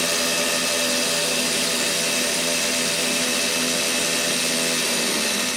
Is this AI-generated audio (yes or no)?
no